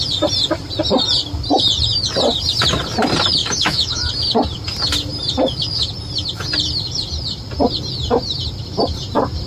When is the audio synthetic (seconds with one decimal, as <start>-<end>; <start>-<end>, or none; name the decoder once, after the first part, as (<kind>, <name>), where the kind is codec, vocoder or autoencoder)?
3.4-4.1 (autoencoder, DAC-VAE)